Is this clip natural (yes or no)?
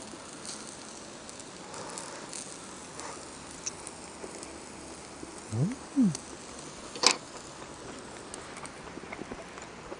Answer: yes